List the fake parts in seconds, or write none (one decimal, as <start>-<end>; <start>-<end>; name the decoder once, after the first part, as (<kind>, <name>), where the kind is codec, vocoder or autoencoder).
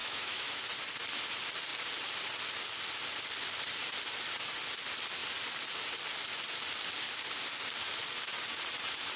0.0-0.6 (autoencoder, DAC-VAE)